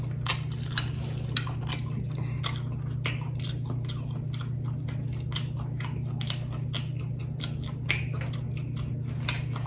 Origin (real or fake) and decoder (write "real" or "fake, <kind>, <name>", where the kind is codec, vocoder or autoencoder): real